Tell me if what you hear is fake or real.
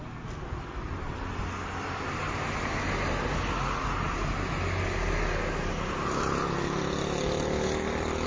real